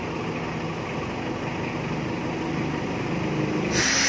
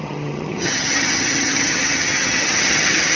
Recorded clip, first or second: first